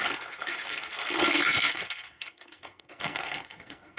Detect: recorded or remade remade